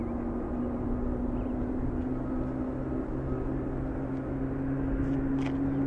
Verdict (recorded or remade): recorded